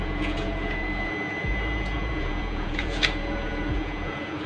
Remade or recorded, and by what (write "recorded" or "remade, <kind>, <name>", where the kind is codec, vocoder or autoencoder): remade, vocoder, Vocos